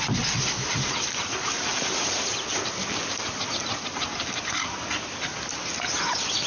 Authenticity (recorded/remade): recorded